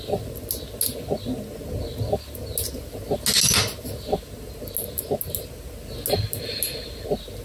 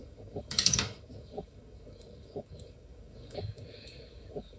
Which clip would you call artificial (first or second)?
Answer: second